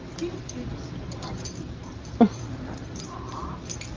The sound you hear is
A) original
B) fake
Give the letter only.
B